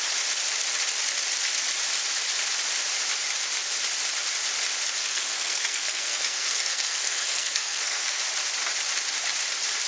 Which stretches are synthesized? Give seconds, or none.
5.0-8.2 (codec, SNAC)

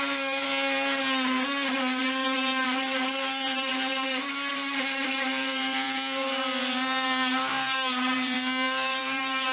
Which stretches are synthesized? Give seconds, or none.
0.0-0.5 (vocoder, BigVGAN v2); 2.0-9.5

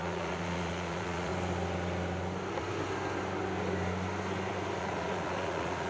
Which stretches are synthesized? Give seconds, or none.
0.0-1.3 (vocoder, Vocos); 4.8-5.9